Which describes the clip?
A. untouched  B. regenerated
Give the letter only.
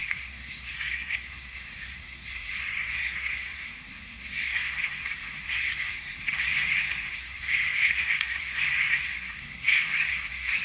B